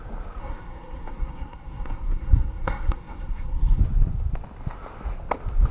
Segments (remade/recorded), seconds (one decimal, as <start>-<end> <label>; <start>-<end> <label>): 0.0-0.4 recorded; 0.4-3.8 remade; 3.8-5.7 recorded